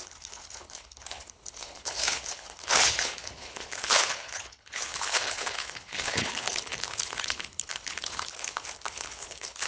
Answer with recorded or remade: remade